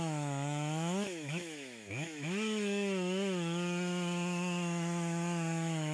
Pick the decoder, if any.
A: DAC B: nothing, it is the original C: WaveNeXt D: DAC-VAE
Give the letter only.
D